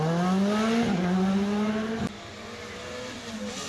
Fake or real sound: real